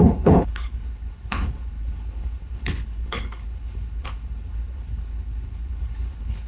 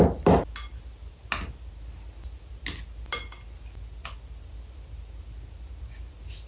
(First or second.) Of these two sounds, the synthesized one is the first